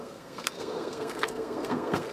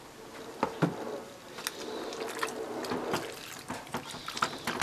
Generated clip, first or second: first